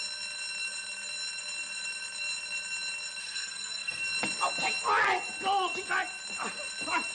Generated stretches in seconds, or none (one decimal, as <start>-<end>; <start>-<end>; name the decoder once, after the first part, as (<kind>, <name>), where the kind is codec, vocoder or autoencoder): 3.2-4.0 (codec, SNAC)